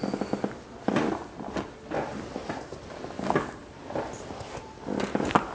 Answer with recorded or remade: recorded